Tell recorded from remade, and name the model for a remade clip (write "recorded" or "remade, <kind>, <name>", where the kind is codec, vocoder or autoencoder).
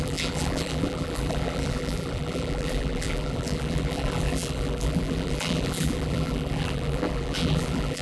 remade, vocoder, BigVGAN v2